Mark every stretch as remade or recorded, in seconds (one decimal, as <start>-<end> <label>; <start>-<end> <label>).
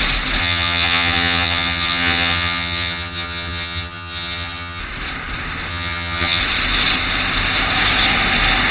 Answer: 0.0-0.4 recorded; 0.4-4.8 remade; 4.8-5.7 recorded; 5.7-6.4 remade; 6.4-8.7 recorded